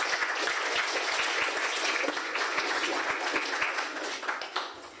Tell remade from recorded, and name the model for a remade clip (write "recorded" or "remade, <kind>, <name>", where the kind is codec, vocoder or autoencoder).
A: remade, vocoder, Vocos